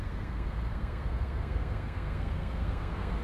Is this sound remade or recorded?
remade